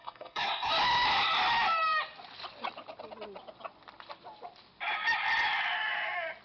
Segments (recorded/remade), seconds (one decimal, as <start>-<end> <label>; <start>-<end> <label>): 0.0-0.7 remade; 0.7-6.4 recorded